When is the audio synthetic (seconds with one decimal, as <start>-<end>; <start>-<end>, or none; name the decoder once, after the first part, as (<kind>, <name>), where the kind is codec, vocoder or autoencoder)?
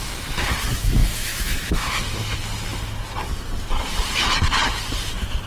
1.0-1.7 (autoencoder, DAC-VAE)